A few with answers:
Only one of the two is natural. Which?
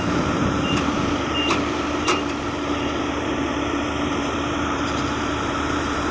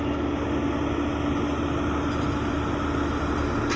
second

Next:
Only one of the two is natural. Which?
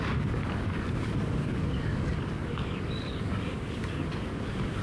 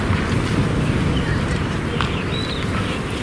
second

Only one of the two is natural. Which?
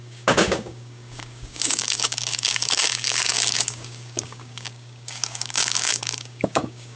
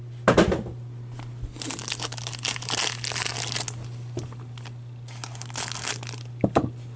second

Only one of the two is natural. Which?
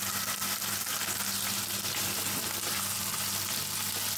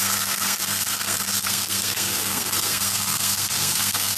first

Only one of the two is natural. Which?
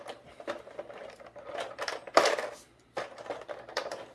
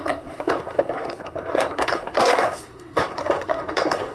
first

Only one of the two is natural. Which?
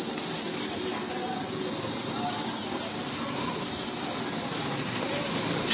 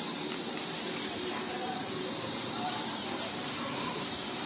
first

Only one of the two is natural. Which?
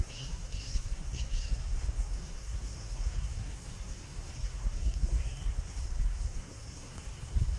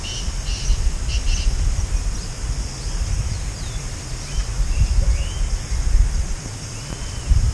second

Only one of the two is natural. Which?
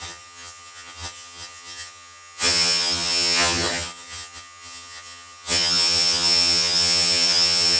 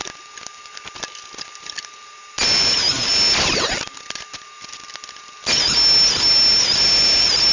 second